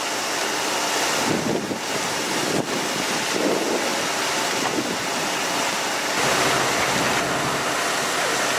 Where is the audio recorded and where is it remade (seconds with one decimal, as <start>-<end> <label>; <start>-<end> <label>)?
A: 0.0-8.6 recorded